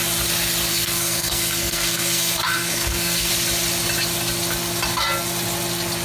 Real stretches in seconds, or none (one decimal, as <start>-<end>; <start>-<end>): 0.0-0.7; 3.3-6.0